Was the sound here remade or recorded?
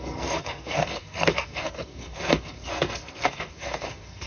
remade